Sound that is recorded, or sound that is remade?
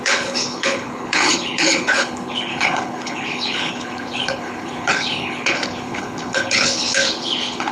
remade